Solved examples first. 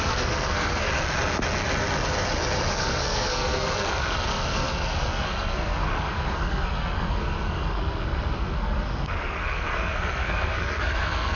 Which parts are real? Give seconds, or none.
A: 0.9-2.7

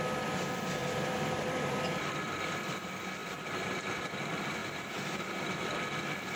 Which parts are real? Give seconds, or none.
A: 0.0-0.8; 2.1-6.4

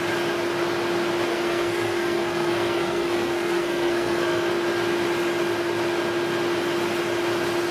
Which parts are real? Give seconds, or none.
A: 0.0-1.3; 4.5-7.7

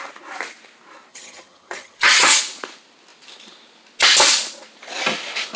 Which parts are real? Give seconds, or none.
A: 0.0-1.1; 2.4-5.6

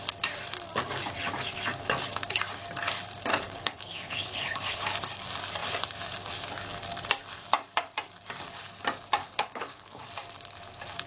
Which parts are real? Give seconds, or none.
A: 0.0-3.3; 4.8-9.2; 10.1-11.1

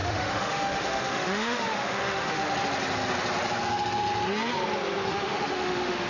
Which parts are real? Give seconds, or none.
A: 2.4-5.1